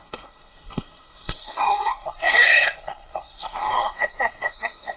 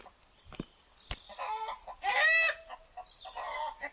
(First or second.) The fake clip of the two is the first